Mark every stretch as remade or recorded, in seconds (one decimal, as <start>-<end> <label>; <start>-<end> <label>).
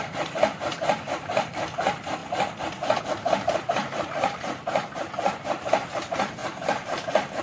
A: 0.0-2.2 remade; 2.2-3.0 recorded; 3.0-7.4 remade